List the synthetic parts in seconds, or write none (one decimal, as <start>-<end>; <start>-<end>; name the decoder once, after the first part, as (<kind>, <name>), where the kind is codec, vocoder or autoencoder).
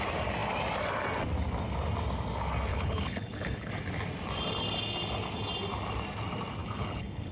2.7-3.7 (codec, HILCodec); 6.6-7.3